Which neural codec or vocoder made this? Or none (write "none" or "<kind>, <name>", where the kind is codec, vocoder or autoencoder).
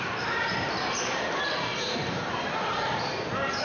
vocoder, BigVGAN v2